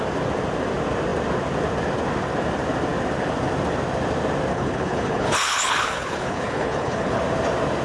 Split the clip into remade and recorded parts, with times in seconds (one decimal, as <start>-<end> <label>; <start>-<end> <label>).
0.0-4.5 recorded; 4.5-7.2 remade; 7.2-7.8 recorded